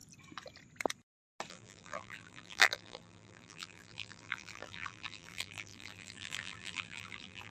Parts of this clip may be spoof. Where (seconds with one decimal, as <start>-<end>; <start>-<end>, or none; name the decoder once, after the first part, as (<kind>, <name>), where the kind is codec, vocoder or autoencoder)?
1.5-7.5 (vocoder, BigVGAN v2)